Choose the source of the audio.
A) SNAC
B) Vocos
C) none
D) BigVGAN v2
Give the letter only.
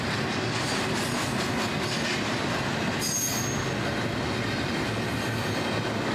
C